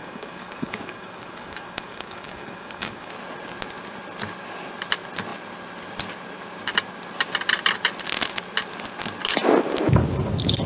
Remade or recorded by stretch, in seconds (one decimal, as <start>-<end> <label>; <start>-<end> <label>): 0.0-3.1 remade; 3.1-10.7 recorded